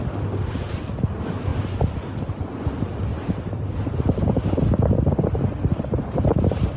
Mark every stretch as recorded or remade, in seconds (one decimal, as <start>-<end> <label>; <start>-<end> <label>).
0.0-3.1 recorded; 3.1-4.6 remade; 4.6-6.8 recorded